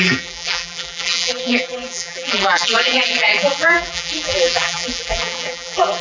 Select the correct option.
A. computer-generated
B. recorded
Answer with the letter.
A